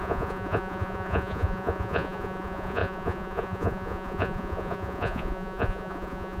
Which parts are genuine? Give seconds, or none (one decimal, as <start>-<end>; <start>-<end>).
none